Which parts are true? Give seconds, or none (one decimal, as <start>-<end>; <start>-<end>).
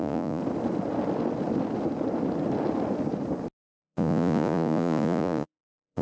0.4-3.8